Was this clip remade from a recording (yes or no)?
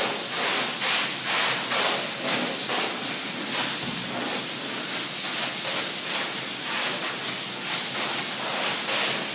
no